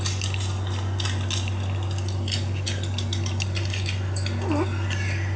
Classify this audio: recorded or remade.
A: recorded